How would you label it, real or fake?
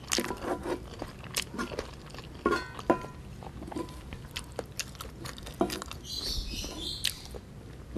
real